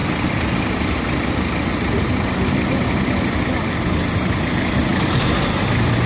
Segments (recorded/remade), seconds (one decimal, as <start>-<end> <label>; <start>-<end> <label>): 0.0-6.1 recorded

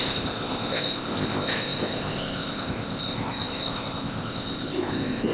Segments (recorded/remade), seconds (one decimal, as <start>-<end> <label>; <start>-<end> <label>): 0.0-5.3 remade

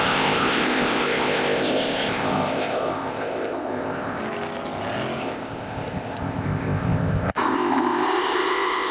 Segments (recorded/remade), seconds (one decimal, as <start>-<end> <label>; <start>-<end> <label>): 0.0-4.2 remade; 4.2-5.2 recorded; 5.2-8.9 remade

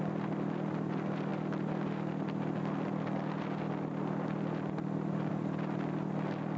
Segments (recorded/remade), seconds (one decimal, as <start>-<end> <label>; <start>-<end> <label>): 0.0-6.6 recorded

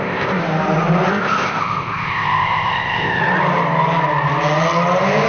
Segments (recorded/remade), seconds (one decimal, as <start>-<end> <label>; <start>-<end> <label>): 0.0-0.4 remade; 0.4-1.1 recorded; 1.1-3.2 remade; 3.2-5.3 recorded

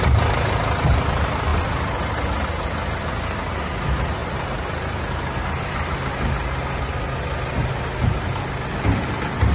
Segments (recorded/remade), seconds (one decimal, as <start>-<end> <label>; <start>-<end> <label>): 0.0-9.5 recorded

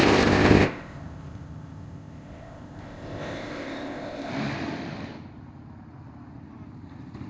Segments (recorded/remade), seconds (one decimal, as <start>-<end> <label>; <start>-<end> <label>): 0.0-4.3 remade; 4.3-7.3 recorded

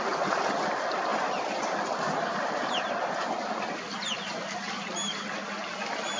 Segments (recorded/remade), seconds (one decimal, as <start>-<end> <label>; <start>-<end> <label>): 0.0-6.2 recorded